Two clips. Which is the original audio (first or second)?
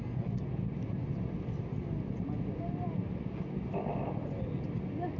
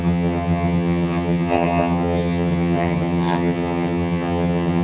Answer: first